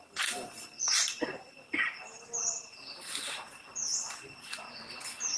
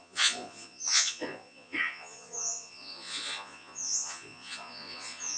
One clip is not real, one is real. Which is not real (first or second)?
second